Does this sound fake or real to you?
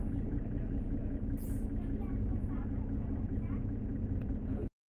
fake